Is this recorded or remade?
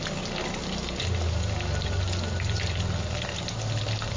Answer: recorded